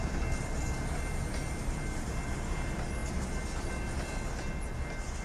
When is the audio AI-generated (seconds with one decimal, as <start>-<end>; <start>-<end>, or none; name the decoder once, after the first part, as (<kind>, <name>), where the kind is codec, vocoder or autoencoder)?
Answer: none